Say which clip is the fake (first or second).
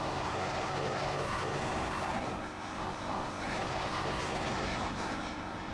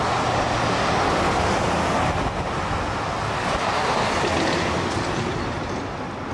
first